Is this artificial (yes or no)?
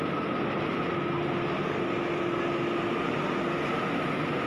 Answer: no